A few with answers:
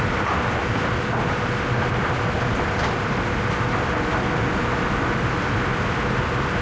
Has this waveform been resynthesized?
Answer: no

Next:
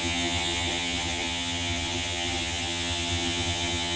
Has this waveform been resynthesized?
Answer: yes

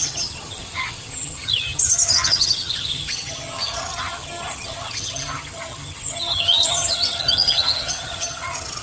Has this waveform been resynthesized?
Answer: yes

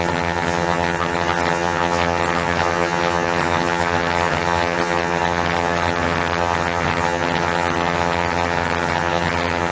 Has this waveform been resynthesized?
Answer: yes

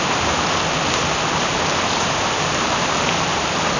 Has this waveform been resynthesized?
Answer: no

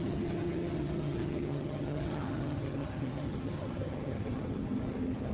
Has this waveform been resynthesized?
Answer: yes